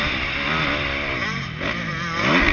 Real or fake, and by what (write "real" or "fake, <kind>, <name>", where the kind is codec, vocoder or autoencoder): real